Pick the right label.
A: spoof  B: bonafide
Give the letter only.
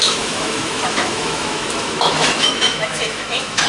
A